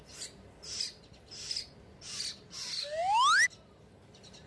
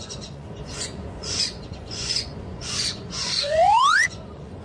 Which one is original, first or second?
first